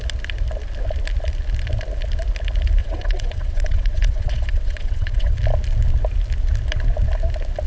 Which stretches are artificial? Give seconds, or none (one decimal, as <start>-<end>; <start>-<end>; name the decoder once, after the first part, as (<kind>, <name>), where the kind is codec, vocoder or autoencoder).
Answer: 2.8-5.4 (vocoder, WaveNeXt)